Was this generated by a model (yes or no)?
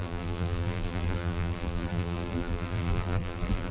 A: yes